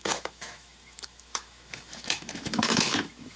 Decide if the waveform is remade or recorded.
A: remade